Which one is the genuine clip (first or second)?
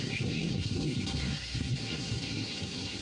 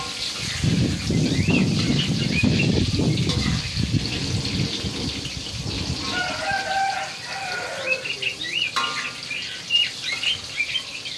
second